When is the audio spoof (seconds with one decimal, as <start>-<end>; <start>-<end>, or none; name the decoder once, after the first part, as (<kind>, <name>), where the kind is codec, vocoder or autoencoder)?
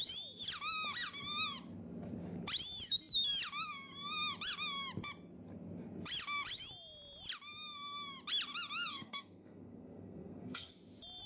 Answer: 8.9-10.7 (codec, SNAC)